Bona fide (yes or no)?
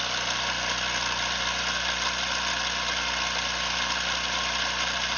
yes